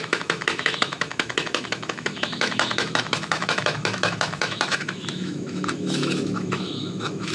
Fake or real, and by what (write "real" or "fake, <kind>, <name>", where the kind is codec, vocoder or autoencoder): fake, autoencoder, DAC-VAE